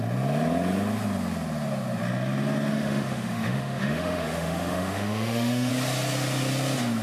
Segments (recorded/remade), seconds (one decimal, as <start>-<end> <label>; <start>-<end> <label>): 0.0-2.7 recorded; 2.7-5.7 remade; 5.7-7.0 recorded